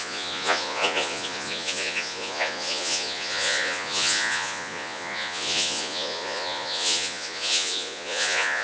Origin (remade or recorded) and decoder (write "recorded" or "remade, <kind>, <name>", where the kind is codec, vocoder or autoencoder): remade, vocoder, Vocos